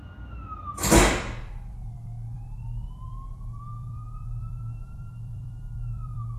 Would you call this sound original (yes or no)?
no